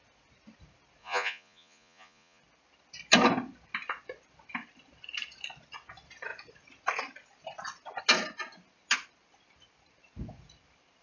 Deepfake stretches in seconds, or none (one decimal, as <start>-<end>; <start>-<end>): 1.0-2.4